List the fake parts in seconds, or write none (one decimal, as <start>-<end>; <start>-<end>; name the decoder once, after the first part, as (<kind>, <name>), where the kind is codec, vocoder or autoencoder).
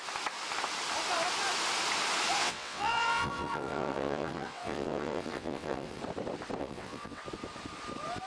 2.4-6.0 (vocoder, WaveNeXt); 6.6-7.2